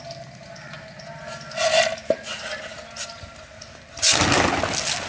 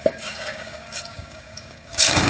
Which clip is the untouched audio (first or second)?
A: first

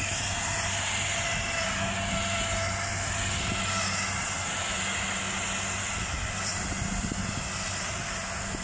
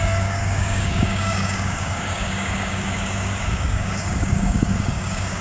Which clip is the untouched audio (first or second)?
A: first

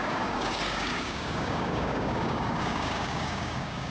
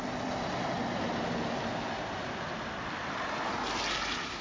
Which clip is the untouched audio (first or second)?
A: second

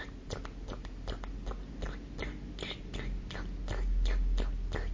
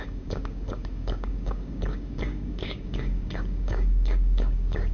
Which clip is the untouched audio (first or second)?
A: first